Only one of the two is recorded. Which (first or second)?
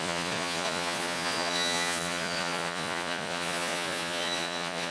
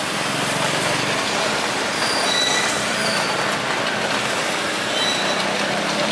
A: second